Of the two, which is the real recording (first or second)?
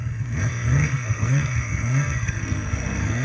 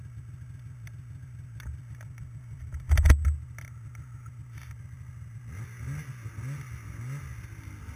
second